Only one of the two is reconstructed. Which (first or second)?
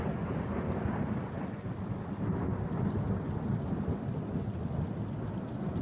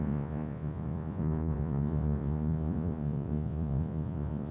second